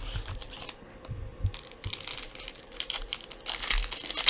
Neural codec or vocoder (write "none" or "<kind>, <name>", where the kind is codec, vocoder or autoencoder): none